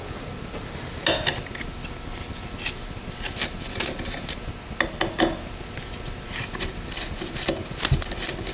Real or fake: real